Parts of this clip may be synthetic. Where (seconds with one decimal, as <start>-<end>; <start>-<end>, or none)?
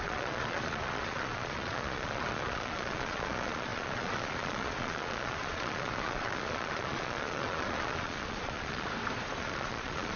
0.0-8.9; 9.4-10.2